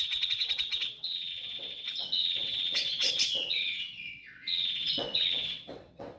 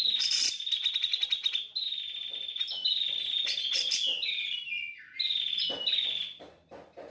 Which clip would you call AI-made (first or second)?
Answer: first